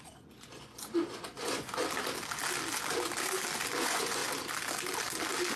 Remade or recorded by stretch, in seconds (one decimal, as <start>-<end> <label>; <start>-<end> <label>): 0.0-1.8 remade; 1.8-3.8 recorded; 3.8-4.2 remade; 4.2-5.6 recorded

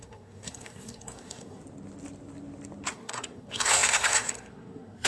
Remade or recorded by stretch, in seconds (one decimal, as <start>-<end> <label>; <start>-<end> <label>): 0.0-1.6 remade; 1.6-2.9 recorded; 2.9-5.1 remade